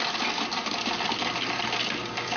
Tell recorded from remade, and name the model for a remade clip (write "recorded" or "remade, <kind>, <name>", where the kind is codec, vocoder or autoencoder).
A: recorded